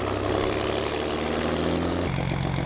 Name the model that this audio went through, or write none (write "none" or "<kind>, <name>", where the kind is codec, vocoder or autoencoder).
none